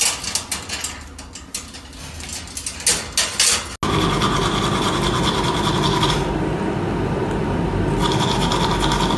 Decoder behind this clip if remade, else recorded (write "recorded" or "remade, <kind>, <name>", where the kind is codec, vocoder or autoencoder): recorded